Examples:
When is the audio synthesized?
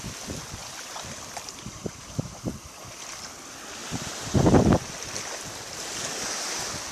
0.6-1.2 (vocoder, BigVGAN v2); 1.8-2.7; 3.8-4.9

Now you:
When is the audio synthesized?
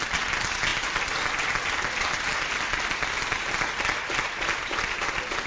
0.7-2.4 (vocoder, BigVGAN v2)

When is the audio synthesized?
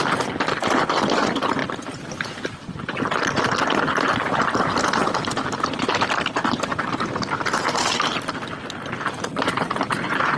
5.3-8.1 (vocoder, BigVGAN v2)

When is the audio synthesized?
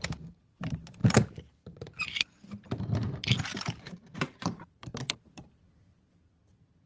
1.0-2.0 (vocoder, BigVGAN v2); 3.5-5.4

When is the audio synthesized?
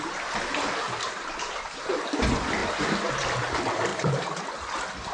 3.9-4.4 (vocoder, BigVGAN v2)